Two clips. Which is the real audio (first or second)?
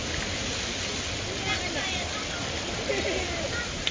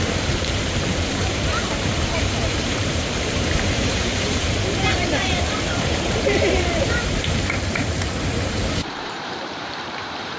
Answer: first